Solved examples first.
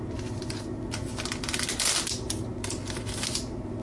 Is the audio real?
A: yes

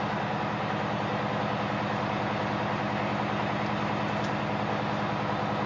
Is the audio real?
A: yes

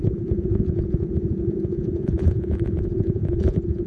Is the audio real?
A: no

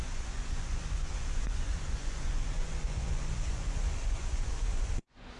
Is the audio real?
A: no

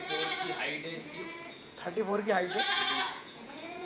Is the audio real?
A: no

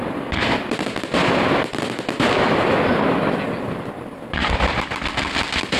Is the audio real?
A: yes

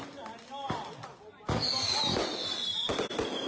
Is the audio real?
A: yes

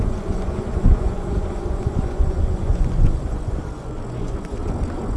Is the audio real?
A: no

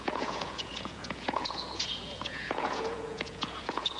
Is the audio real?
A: no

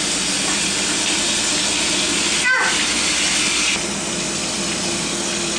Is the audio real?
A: yes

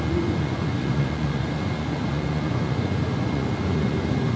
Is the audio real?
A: no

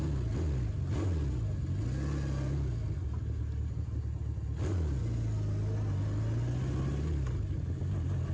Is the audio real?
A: yes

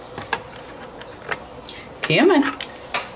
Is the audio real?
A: yes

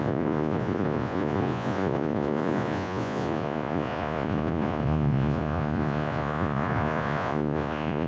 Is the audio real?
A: no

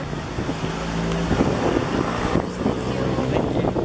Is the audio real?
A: yes